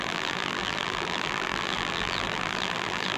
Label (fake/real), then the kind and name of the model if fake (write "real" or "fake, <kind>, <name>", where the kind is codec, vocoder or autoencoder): fake, vocoder, BigVGAN v2